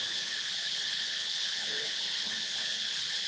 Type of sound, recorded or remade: remade